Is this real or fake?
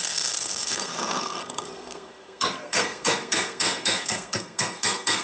fake